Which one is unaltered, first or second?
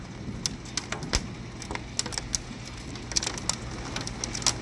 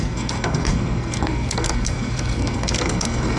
first